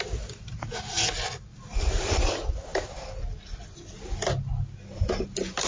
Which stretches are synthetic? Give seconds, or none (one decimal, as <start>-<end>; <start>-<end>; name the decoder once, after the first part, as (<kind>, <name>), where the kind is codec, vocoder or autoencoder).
1.5-2.2 (vocoder, BigVGAN v2)